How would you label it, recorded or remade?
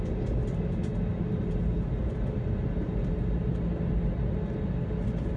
recorded